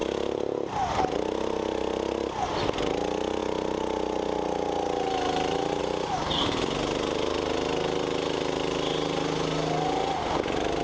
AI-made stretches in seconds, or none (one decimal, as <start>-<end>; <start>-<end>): none